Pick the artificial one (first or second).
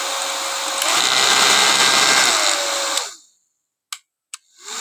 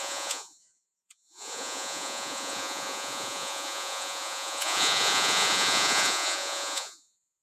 second